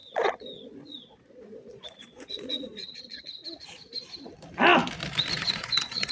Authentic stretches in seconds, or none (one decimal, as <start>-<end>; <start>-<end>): 3.4-5.3